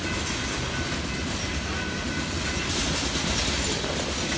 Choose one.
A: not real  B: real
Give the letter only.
B